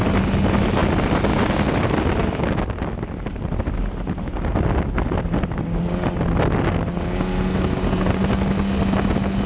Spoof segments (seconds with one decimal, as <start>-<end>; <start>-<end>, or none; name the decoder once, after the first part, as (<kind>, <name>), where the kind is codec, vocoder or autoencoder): none